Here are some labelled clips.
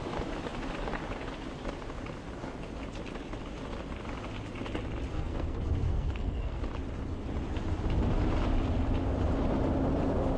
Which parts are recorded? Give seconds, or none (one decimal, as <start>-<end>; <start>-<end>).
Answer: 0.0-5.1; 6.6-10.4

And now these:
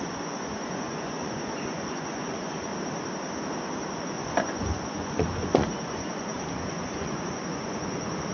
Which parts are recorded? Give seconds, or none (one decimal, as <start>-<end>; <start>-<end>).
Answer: 2.7-4.0

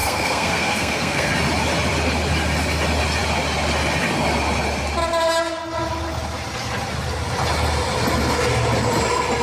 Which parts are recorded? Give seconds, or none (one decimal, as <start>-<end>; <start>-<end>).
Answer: 1.3-9.4

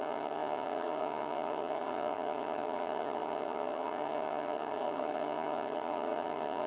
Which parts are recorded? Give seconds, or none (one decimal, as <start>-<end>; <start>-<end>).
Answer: none

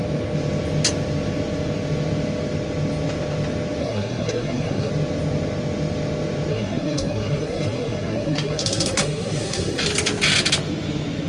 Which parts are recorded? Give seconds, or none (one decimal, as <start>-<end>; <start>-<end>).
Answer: 0.0-3.8; 4.9-6.5; 9.8-11.3

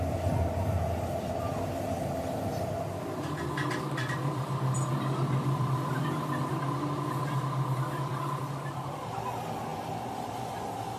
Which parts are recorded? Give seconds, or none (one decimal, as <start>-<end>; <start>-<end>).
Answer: 0.0-2.5; 5.9-8.1; 9.0-9.7; 10.5-11.0